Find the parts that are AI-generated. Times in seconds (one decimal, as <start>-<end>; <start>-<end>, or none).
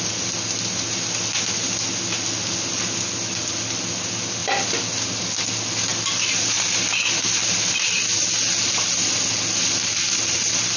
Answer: none